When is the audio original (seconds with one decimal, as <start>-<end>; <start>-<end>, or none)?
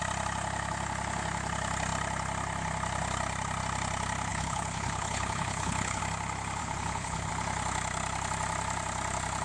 0.0-4.3; 6.0-6.6; 7.3-9.4